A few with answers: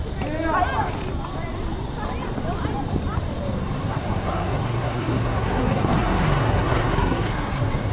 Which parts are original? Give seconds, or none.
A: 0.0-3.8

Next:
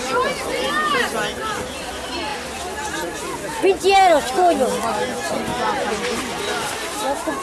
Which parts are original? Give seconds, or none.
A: 0.0-7.4

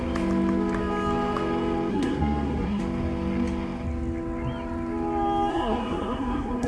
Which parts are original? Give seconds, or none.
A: 0.0-1.9; 2.8-5.5

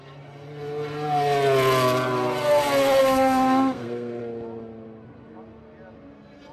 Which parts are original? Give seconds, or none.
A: 0.0-3.0; 4.2-6.5

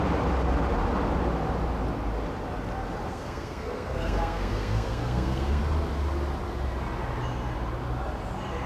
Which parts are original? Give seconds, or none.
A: 0.0-3.0; 5.6-8.7

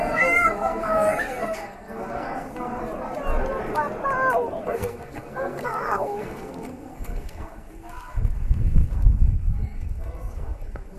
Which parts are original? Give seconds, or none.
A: 2.8-4.6

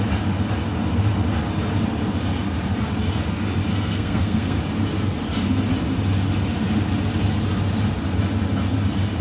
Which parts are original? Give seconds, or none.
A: 0.0-3.7; 4.6-9.2